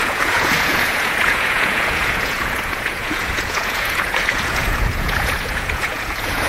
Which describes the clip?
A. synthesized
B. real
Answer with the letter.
A